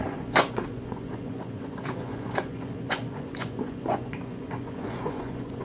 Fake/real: fake